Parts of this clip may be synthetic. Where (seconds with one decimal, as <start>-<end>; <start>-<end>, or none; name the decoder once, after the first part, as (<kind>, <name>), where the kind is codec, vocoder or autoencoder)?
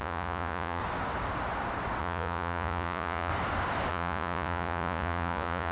0.0-0.8 (vocoder, Vocos); 2.0-3.3; 3.9-5.7